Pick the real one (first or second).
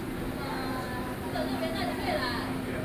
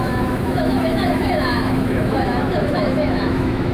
first